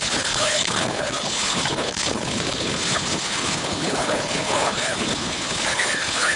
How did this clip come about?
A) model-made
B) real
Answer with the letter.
A